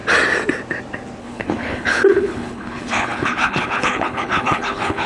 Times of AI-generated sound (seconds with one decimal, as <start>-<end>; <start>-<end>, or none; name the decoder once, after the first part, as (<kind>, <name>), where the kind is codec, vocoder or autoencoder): 1.2-5.1 (codec, HILCodec)